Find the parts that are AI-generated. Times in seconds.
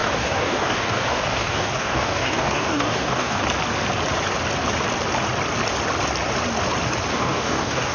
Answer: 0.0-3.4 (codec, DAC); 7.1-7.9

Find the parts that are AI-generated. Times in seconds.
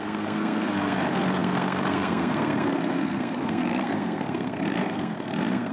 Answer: 0.0-5.7 (codec, SNAC)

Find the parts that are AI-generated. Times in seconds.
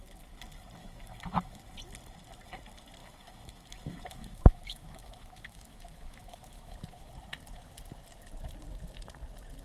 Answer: 0.8-1.6 (autoencoder, DAC-VAE); 3.0-7.1